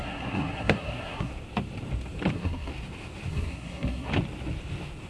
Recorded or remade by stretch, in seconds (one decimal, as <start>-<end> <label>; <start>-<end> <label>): 0.0-1.3 remade; 1.3-2.3 recorded; 2.3-2.7 remade; 2.7-3.3 recorded; 3.3-4.1 remade; 4.1-5.1 recorded